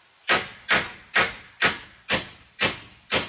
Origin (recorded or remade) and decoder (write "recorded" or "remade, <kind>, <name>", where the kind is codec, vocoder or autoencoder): recorded